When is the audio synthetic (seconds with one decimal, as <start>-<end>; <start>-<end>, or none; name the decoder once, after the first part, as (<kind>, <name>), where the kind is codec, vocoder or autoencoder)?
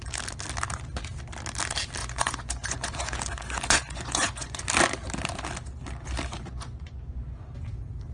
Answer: 2.0-4.6 (vocoder, Vocos); 6.5-7.5